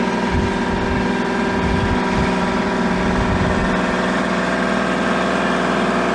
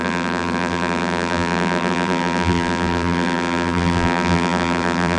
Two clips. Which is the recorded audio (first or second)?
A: first